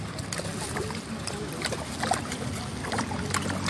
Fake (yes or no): no